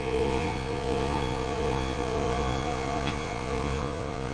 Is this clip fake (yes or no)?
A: yes